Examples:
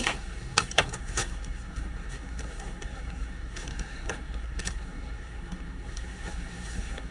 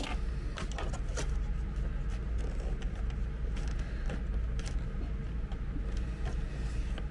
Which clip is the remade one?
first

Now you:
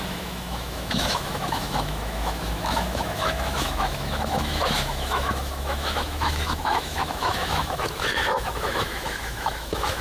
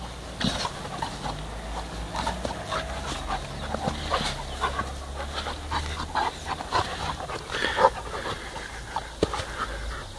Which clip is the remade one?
first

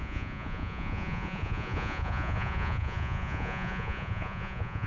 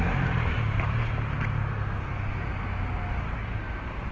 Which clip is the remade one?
first